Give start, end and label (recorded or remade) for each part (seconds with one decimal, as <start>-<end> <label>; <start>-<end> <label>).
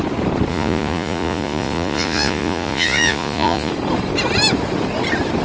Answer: 0.0-0.5 recorded; 0.5-3.7 remade; 3.7-5.4 recorded